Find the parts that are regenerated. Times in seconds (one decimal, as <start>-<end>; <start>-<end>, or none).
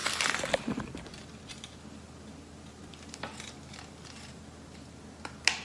none